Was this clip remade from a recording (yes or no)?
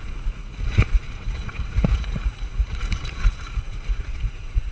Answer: yes